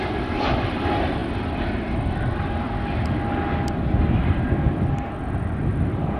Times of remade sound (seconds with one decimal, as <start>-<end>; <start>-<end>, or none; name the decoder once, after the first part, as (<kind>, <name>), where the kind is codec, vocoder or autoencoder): none